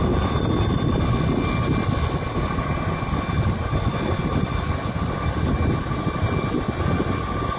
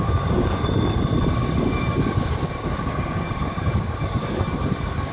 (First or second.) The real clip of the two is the first